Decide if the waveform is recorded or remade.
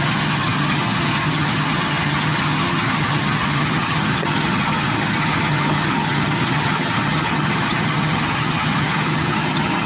remade